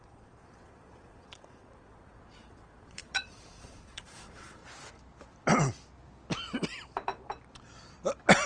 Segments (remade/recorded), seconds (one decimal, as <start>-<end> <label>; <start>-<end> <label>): 0.0-4.6 remade; 4.6-8.5 recorded